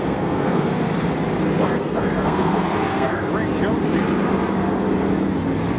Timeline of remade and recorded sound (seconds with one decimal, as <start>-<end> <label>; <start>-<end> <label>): 0.0-0.9 remade; 0.9-1.6 recorded; 1.6-3.3 remade; 3.3-5.8 recorded